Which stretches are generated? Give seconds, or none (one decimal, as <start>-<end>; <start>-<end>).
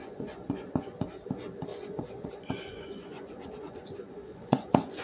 0.0-1.0; 1.7-5.0